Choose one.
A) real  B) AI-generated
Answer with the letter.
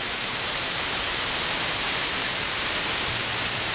B